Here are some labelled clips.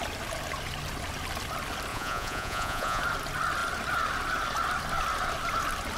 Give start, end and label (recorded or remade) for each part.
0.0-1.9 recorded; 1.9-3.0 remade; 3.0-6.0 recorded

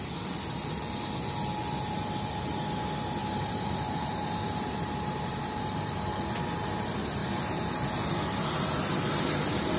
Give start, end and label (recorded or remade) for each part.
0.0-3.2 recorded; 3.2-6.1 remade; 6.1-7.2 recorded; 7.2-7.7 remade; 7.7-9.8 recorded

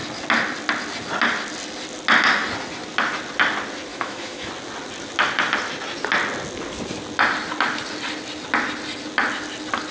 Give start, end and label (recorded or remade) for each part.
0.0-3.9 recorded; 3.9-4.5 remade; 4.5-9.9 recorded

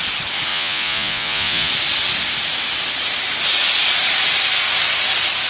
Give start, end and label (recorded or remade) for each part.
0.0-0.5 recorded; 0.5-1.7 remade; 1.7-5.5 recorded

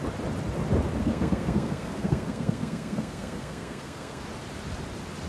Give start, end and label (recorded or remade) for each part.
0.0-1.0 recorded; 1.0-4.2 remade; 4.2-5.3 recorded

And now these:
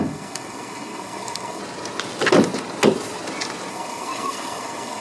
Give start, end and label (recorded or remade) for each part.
0.0-1.6 remade; 1.6-3.7 recorded; 3.7-5.0 remade

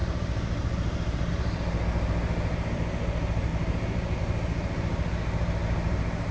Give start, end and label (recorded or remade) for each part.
0.0-1.3 remade; 1.3-3.5 recorded; 3.5-4.2 remade; 4.2-5.6 recorded; 5.6-6.3 remade

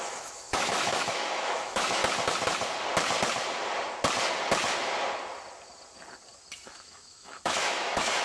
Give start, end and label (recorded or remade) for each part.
0.0-2.0 remade; 2.0-6.7 recorded; 6.7-8.2 remade